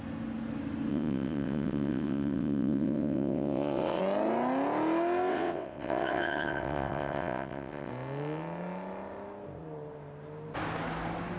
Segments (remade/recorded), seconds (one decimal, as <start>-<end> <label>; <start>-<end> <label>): 0.0-0.9 recorded; 0.9-4.0 remade; 4.0-5.3 recorded; 5.3-7.9 remade; 7.9-11.4 recorded